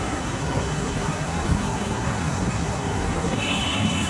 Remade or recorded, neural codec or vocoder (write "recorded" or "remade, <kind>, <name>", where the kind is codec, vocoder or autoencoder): remade, codec, SNAC